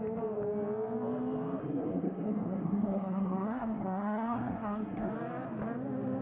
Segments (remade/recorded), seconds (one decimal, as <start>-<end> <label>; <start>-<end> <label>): 0.0-1.6 recorded; 1.6-5.1 remade; 5.1-6.2 recorded